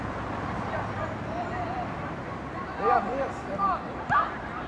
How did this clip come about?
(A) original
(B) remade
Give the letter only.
B